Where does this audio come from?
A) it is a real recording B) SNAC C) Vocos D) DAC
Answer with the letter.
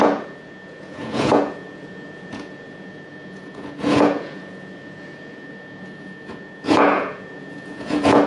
C